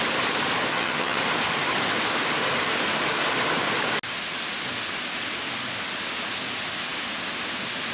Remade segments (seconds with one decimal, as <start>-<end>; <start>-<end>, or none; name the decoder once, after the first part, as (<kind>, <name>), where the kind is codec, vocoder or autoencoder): 0.7-1.2 (vocoder, HiFi-GAN)